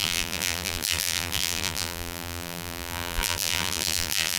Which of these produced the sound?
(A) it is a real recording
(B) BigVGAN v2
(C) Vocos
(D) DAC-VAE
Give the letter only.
B